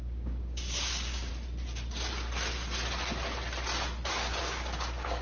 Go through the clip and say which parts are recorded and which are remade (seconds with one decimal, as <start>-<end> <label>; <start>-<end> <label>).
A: 0.0-1.3 remade; 1.3-4.4 recorded; 4.4-5.2 remade